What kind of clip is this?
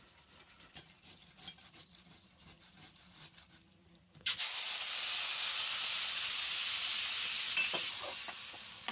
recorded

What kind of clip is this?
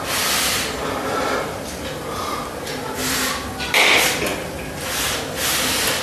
recorded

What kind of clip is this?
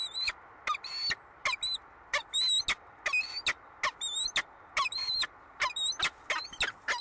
recorded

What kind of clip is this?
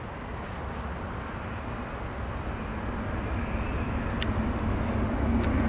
recorded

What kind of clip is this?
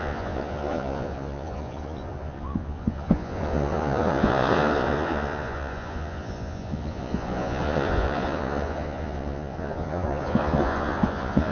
remade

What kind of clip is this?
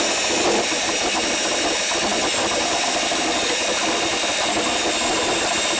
recorded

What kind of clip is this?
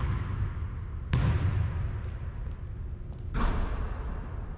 recorded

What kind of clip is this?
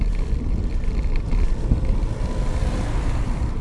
recorded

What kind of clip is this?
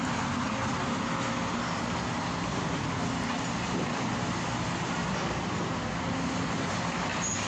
recorded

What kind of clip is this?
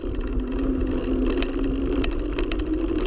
recorded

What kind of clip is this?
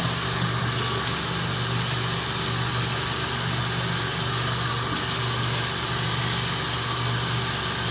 recorded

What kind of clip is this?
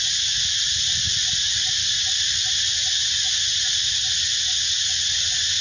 recorded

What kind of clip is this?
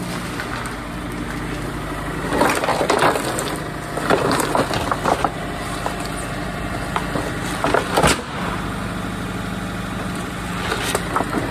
recorded